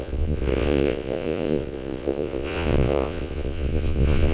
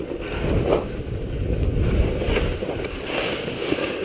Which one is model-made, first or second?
first